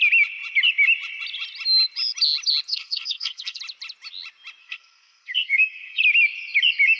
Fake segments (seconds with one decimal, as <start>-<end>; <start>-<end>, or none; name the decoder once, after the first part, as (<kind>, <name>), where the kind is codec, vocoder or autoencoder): 2.7-3.6 (codec, SNAC); 4.6-6.0